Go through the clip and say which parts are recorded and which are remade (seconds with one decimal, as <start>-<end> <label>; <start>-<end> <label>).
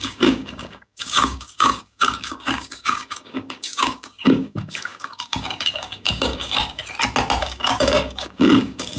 0.0-6.8 remade; 6.8-7.4 recorded; 7.4-9.0 remade